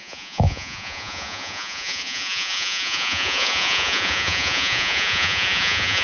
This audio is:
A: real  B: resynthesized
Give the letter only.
B